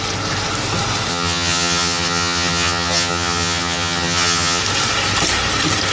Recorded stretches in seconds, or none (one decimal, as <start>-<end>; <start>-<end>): 0.0-1.1; 4.6-5.9